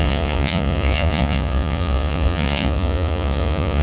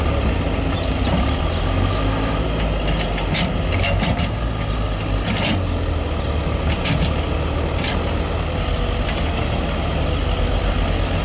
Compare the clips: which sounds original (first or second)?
second